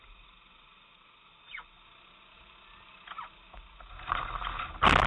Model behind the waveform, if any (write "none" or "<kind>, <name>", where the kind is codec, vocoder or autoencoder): none